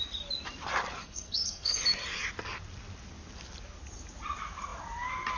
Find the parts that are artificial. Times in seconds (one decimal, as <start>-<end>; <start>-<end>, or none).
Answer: 1.0-1.8